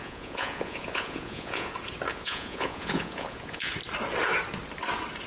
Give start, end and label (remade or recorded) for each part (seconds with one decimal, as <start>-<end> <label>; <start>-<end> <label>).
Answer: 0.0-1.7 remade; 1.7-2.1 recorded; 2.1-3.7 remade; 3.7-5.3 recorded